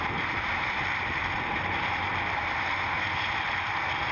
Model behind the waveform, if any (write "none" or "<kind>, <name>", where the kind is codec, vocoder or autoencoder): none